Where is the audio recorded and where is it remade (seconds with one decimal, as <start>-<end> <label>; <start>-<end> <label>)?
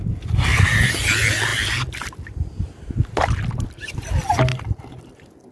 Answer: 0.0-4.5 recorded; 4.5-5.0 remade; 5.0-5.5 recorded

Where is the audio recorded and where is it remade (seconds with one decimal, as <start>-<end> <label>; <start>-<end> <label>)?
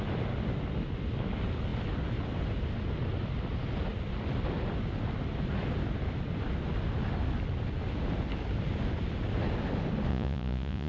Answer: 0.0-10.1 recorded; 10.1-10.9 remade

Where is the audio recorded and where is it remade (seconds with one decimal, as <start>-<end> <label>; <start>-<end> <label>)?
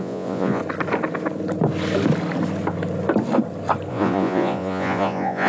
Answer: 0.0-0.6 remade; 0.6-3.9 recorded; 3.9-5.5 remade